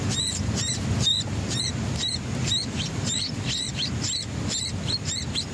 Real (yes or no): no